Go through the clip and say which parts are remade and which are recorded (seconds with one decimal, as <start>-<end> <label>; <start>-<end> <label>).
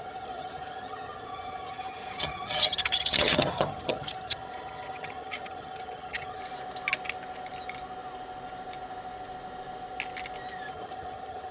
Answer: 0.0-6.4 remade; 6.4-10.7 recorded; 10.7-11.5 remade